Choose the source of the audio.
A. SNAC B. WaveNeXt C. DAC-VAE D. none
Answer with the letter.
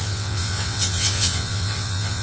B